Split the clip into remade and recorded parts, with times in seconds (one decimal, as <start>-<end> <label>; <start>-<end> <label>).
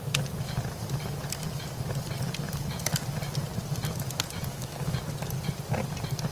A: 0.0-4.5 recorded; 4.5-5.0 remade; 5.0-6.3 recorded